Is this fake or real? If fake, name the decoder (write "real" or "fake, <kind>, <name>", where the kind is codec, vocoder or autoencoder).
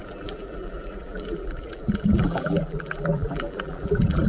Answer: fake, vocoder, BigVGAN v2